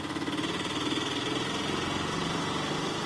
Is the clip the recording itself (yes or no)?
yes